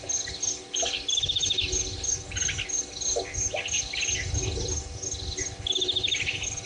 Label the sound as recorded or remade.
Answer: recorded